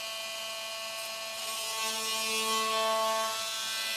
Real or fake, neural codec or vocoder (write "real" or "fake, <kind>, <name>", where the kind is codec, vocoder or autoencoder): real